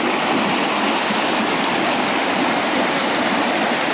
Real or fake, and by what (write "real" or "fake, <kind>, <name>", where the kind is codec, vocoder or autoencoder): real